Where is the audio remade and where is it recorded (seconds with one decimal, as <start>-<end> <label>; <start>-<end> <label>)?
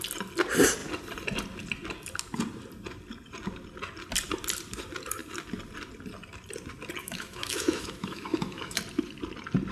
0.0-7.0 recorded; 7.0-8.8 remade; 8.8-9.7 recorded